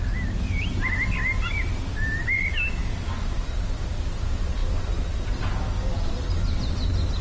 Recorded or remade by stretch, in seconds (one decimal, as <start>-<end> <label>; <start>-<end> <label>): 0.0-7.2 recorded